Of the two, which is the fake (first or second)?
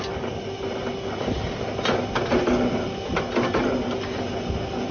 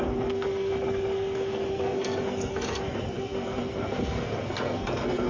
second